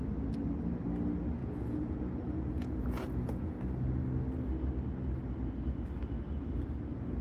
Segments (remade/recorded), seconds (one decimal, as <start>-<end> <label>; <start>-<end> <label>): 0.0-1.4 recorded; 1.4-3.6 remade; 3.6-7.2 recorded